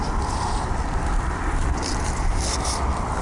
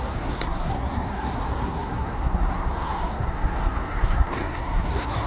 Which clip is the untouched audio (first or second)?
first